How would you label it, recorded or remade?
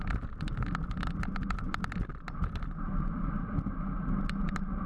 remade